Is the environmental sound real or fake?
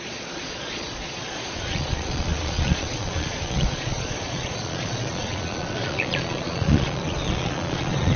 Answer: fake